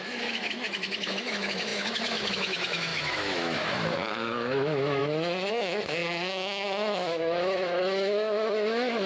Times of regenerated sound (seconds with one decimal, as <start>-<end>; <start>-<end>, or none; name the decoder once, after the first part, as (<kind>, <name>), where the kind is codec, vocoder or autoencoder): 0.0-9.1 (autoencoder, DAC-VAE)